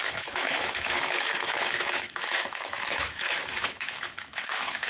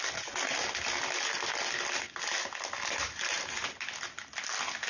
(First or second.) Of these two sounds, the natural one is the second